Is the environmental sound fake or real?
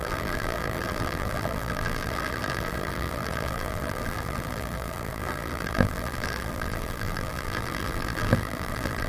fake